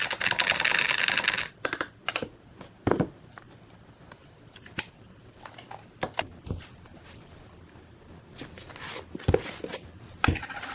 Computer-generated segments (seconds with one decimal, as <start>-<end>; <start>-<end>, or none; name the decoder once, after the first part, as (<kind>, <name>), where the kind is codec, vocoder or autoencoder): 4.2-7.1 (vocoder, BigVGAN v2)